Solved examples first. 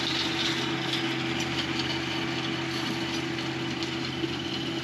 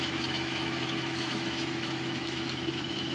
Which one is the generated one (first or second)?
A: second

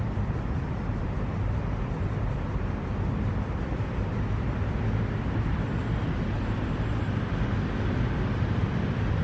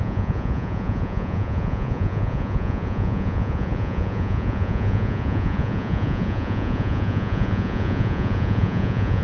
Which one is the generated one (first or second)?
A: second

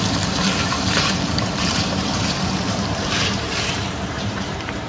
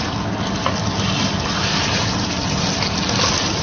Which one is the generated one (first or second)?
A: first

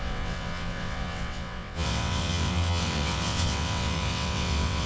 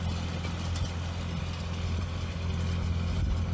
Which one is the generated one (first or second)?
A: first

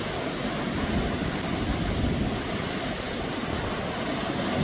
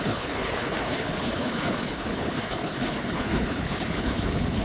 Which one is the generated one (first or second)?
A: second